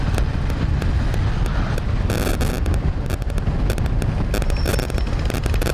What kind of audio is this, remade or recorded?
recorded